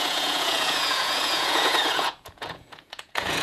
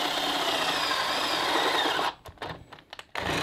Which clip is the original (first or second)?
second